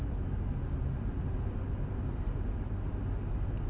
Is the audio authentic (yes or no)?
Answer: yes